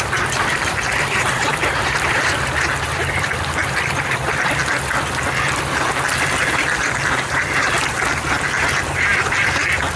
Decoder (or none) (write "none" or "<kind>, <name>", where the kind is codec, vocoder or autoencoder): vocoder, BigVGAN v2